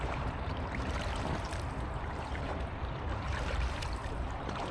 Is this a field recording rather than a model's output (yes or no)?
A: no